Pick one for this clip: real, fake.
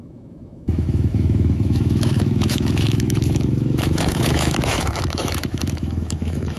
fake